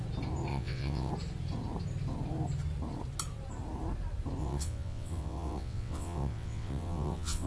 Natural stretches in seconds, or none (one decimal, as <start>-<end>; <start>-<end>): 0.0-0.5; 1.1-4.4